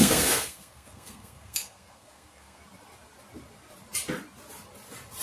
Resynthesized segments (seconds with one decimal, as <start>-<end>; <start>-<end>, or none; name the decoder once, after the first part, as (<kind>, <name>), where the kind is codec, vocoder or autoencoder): 0.0-2.6 (codec, SNAC)